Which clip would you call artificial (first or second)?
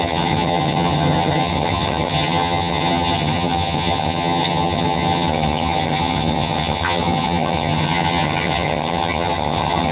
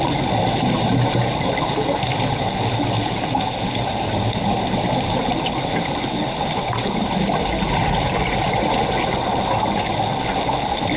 first